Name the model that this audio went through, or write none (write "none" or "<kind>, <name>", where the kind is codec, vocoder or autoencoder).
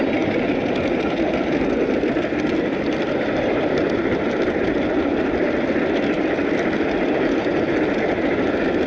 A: none